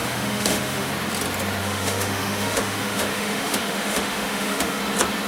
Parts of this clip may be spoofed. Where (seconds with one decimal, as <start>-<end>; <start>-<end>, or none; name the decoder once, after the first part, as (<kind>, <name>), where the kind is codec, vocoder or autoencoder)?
0.0-0.9 (autoencoder, DAC-VAE); 1.6-4.8